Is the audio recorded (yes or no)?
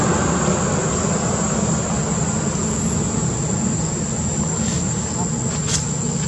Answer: yes